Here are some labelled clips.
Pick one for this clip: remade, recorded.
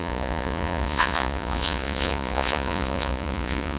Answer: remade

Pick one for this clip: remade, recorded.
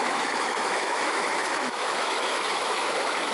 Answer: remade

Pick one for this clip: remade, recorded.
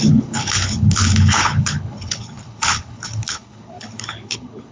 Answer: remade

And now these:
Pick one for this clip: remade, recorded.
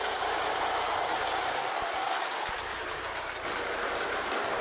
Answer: recorded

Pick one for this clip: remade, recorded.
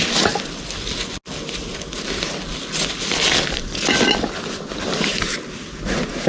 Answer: recorded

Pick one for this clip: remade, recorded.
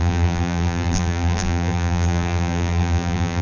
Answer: remade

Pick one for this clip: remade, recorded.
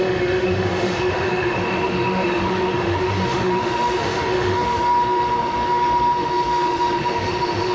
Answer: remade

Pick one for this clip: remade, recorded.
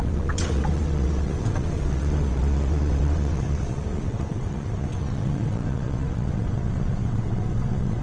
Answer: remade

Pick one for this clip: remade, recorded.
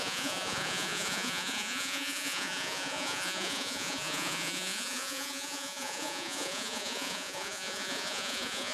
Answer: remade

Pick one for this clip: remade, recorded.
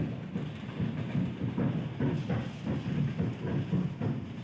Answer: recorded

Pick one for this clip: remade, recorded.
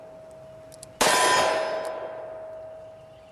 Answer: recorded